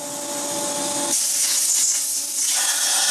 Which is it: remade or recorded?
recorded